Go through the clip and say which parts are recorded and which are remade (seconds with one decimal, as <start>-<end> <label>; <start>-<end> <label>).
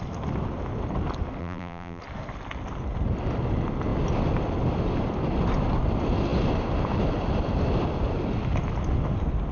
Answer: 0.0-1.4 recorded; 1.4-2.0 remade; 2.0-9.5 recorded